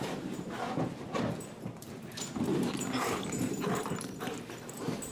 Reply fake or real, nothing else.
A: fake